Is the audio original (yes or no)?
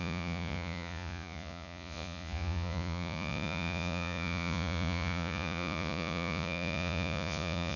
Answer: no